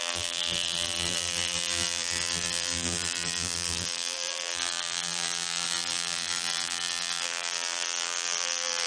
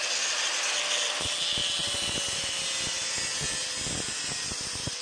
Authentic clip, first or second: second